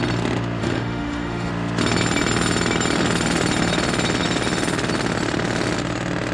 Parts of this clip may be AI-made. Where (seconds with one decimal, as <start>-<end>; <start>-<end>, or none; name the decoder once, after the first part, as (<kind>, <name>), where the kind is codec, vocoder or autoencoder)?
0.6-1.5 (autoencoder, DAC-VAE)

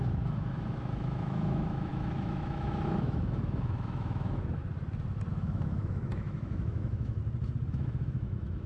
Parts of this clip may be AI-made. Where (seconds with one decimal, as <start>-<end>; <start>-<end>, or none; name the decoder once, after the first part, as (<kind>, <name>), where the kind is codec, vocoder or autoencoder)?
0.0-4.6 (autoencoder, DAC-VAE); 5.3-7.2; 7.7-8.7

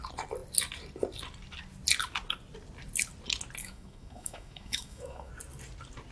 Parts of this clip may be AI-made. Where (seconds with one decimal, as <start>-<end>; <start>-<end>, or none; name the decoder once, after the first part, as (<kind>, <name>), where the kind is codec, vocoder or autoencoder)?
3.6-5.3 (autoencoder, DAC-VAE)

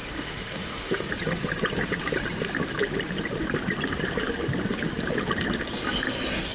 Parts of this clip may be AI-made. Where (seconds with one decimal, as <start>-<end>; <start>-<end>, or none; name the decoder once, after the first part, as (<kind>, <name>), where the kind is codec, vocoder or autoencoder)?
0.0-1.1 (autoencoder, DAC-VAE)

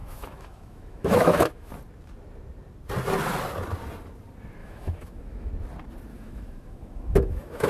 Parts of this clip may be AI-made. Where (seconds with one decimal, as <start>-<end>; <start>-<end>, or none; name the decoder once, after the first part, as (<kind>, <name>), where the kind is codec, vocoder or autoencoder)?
0.0-1.7 (autoencoder, DAC-VAE); 4.6-5.5; 6.1-7.7

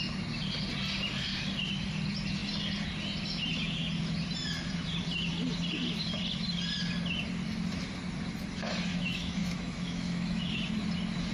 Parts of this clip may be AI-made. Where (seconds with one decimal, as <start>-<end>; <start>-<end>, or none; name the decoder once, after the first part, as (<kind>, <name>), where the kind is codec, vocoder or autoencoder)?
8.9-10.5 (autoencoder, DAC-VAE)

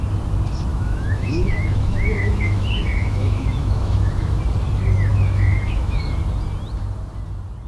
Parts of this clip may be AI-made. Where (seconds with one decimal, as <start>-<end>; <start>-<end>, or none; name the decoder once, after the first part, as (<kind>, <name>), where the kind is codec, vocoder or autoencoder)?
0.7-4.4 (autoencoder, DAC-VAE); 5.1-6.0

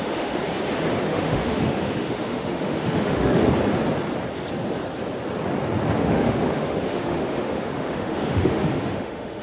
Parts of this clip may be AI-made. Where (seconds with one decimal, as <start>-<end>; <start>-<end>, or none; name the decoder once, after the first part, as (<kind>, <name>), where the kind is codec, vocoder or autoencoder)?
0.0-0.4 (autoencoder, DAC-VAE); 1.0-3.4; 6.0-9.4